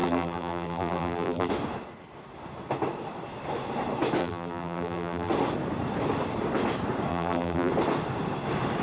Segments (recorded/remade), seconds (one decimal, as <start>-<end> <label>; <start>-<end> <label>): 0.0-1.5 remade; 1.5-4.2 recorded; 4.2-5.3 remade; 5.3-7.1 recorded; 7.1-7.7 remade; 7.7-8.8 recorded